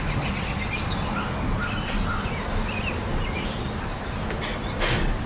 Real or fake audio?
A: real